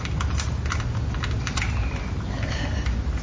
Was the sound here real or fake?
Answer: real